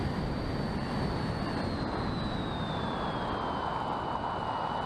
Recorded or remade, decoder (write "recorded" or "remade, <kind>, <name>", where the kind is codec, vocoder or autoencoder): recorded